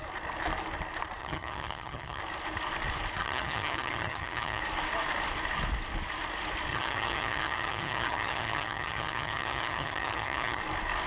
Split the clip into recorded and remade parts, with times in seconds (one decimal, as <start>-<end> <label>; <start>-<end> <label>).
0.0-1.2 recorded; 1.2-2.2 remade; 2.2-3.2 recorded; 3.2-4.6 remade; 4.6-6.7 recorded; 6.7-10.6 remade; 10.6-11.1 recorded

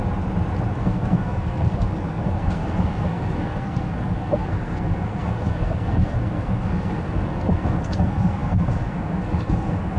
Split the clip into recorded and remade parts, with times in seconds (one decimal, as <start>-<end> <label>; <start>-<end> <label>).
0.0-0.8 recorded; 0.8-10.0 remade

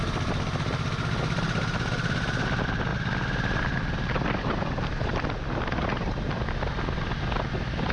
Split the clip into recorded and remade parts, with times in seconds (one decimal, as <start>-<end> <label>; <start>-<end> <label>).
0.0-7.9 recorded

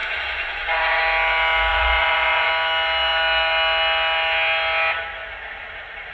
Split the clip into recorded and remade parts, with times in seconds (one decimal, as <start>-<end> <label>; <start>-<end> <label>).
0.0-1.0 remade; 1.0-1.7 recorded; 1.7-2.5 remade; 2.5-6.1 recorded